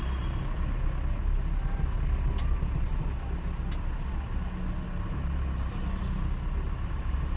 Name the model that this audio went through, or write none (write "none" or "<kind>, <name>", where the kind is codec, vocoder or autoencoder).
none